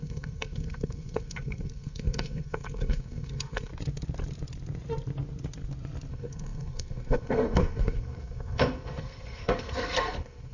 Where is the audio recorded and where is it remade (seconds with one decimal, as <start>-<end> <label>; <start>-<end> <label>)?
0.0-3.7 remade; 3.7-6.1 recorded; 6.1-10.5 remade